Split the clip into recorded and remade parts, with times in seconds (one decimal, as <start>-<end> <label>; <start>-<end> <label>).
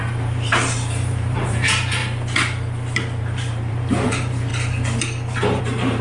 0.0-2.0 remade; 2.0-3.2 recorded; 3.2-4.5 remade; 4.5-5.6 recorded; 5.6-6.0 remade